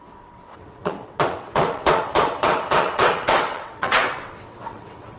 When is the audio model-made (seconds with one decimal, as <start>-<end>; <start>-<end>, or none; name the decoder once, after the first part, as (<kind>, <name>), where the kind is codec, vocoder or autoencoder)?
0.0-5.2 (vocoder, WaveNeXt)